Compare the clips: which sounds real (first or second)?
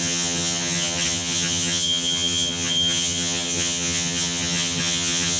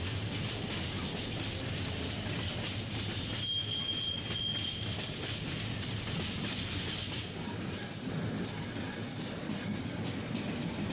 second